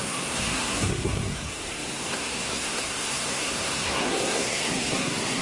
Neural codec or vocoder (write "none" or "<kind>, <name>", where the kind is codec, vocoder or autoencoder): codec, SNAC